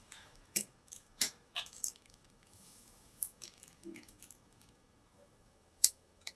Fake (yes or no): yes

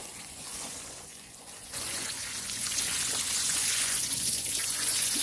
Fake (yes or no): yes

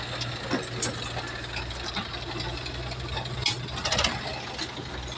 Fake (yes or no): no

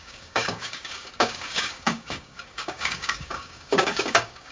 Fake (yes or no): yes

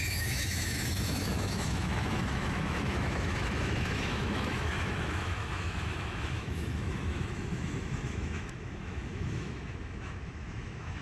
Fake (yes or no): yes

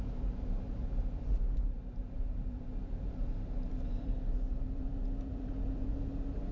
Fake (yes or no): yes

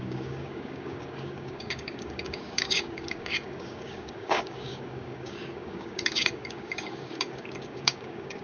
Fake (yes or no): yes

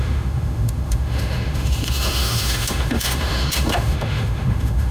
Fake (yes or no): yes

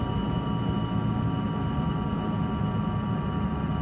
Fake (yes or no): no